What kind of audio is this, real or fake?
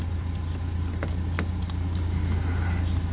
real